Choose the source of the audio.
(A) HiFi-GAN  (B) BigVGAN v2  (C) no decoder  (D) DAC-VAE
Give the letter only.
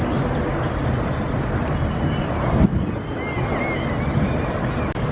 C